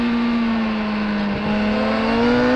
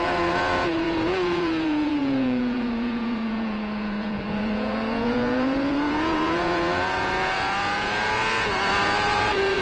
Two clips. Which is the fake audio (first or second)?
second